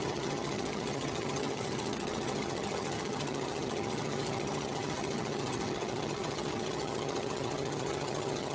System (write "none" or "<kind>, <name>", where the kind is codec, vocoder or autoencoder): vocoder, HiFi-GAN